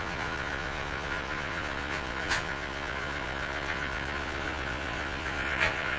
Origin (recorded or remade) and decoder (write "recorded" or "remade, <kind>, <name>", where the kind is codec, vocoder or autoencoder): remade, vocoder, Vocos